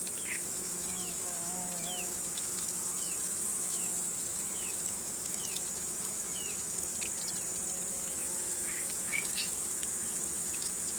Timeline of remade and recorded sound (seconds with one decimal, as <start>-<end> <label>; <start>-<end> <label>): 0.0-6.9 remade; 6.9-7.9 recorded; 7.9-11.0 remade